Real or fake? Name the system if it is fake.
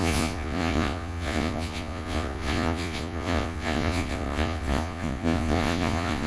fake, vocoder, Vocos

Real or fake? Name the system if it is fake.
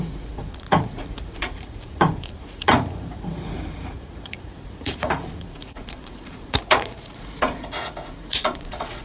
fake, vocoder, Vocos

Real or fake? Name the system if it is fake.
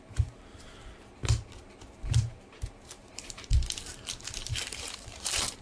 fake, vocoder, BigVGAN v2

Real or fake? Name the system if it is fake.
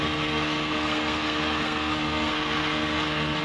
fake, codec, SNAC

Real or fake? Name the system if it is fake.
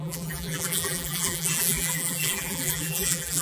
fake, vocoder, BigVGAN v2